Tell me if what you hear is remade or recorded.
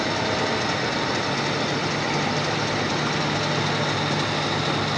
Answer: recorded